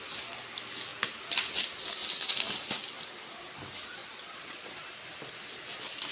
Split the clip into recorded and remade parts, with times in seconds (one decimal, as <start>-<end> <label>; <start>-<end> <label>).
0.0-4.0 recorded; 4.0-4.7 remade; 4.7-6.1 recorded